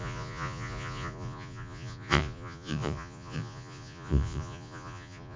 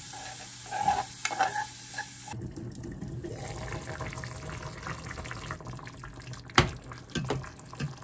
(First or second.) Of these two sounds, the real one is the second